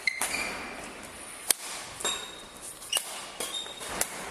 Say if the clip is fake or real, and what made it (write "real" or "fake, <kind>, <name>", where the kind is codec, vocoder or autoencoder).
real